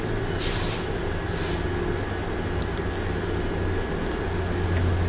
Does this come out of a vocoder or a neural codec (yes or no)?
no